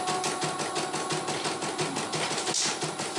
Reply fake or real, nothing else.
real